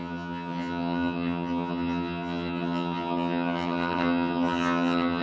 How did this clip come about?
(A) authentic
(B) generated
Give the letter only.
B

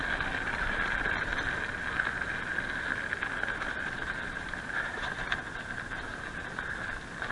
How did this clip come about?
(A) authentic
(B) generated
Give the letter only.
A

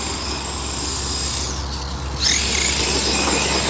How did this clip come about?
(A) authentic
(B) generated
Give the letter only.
A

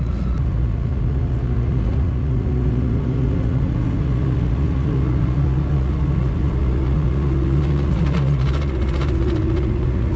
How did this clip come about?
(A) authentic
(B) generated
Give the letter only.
B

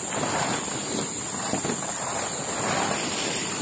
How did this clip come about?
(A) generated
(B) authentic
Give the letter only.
B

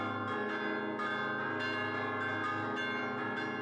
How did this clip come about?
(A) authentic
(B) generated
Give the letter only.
A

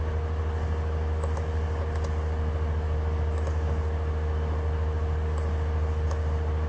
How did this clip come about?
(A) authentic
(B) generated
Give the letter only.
A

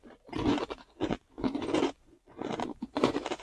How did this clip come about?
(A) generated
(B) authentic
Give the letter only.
A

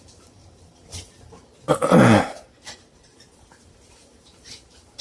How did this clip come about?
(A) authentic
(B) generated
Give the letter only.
B